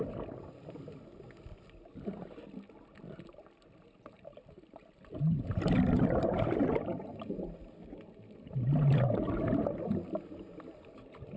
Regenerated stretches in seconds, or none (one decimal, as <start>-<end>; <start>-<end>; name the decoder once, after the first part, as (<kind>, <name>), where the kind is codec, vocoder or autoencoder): none